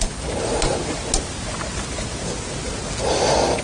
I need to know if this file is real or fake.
real